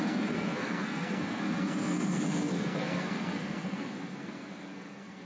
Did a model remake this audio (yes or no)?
yes